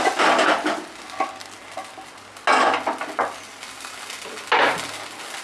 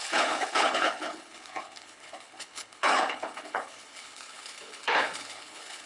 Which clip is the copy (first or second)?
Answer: second